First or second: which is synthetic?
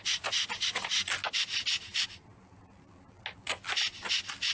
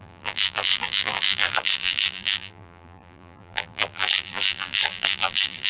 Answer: second